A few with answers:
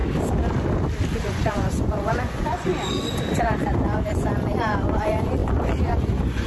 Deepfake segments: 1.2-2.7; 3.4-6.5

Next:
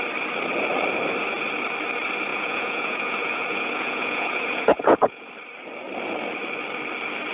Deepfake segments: 2.3-5.3

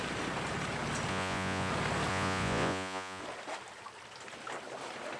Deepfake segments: 1.1-1.7; 2.1-3.2

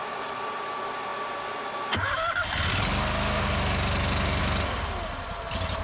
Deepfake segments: none

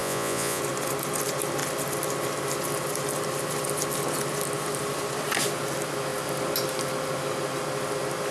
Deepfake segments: 0.0-0.6

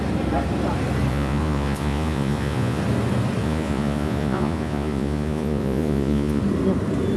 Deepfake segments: 1.1-2.8; 3.4-6.4